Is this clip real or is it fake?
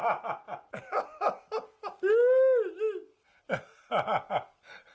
real